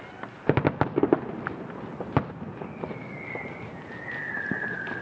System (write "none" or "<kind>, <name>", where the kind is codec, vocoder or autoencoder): none